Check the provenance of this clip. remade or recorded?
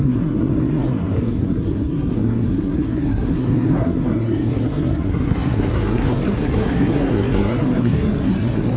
remade